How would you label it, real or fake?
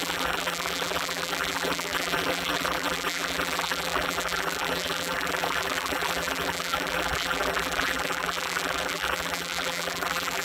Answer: fake